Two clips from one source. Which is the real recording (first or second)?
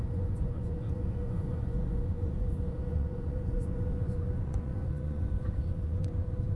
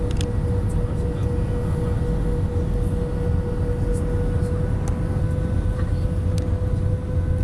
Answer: second